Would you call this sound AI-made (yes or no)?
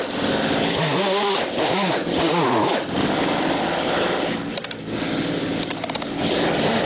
no